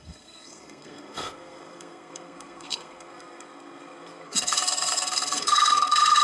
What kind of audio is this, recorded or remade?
remade